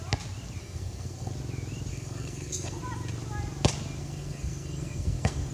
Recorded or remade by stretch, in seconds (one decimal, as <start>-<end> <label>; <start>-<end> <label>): 0.0-0.6 recorded; 0.6-1.3 remade; 1.3-1.9 recorded; 1.9-2.8 remade; 2.8-4.0 recorded; 4.0-5.5 remade